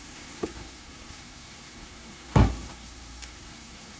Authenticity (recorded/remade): remade